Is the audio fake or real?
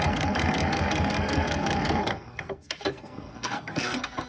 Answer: fake